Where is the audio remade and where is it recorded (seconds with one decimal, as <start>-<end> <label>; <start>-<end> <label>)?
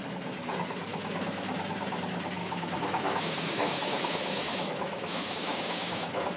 0.0-0.9 recorded; 0.9-1.6 remade; 1.6-2.4 recorded; 2.4-6.4 remade